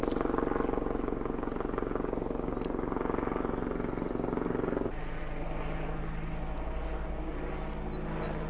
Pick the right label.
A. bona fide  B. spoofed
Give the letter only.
A